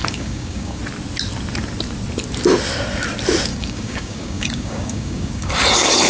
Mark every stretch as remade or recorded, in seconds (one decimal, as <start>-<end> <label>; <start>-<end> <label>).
0.0-0.8 remade; 0.8-3.5 recorded; 3.5-5.5 remade; 5.5-6.1 recorded